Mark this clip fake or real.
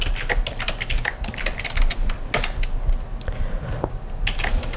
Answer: real